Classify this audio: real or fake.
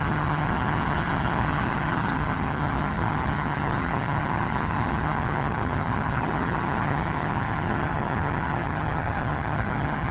fake